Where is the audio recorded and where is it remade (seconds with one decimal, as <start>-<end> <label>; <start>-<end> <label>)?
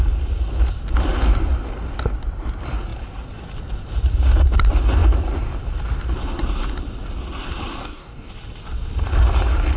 0.0-7.8 recorded; 7.8-8.3 remade; 8.3-9.8 recorded